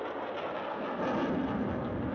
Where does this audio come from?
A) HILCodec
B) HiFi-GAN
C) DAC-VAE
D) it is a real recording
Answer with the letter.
D